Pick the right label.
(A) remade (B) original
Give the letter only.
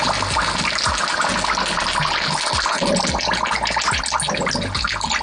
B